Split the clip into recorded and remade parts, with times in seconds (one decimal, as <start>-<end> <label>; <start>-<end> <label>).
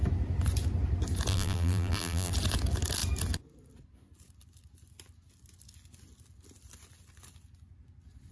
0.0-1.3 recorded; 1.3-2.3 remade; 2.3-8.3 recorded